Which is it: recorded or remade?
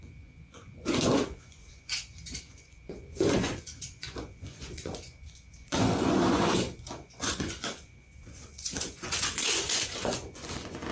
remade